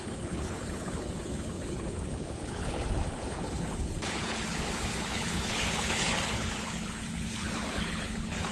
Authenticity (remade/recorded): remade